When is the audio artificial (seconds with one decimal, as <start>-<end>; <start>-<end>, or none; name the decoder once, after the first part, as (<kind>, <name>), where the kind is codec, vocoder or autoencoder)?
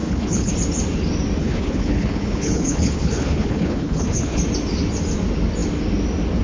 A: 0.0-0.5 (codec, HILCodec); 1.4-4.4